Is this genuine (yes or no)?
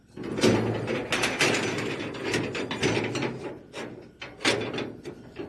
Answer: yes